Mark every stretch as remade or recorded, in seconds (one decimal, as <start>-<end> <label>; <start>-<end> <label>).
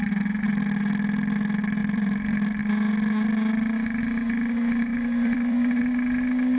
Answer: 0.0-1.8 recorded; 1.8-2.6 remade; 2.6-4.9 recorded; 4.9-5.8 remade; 5.8-6.6 recorded